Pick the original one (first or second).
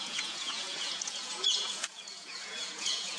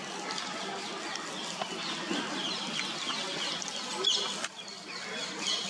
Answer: second